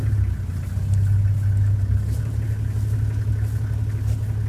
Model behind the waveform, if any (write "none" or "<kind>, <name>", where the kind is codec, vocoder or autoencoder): none